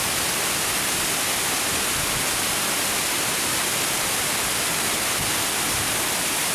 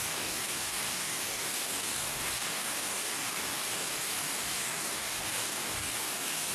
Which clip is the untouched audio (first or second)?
first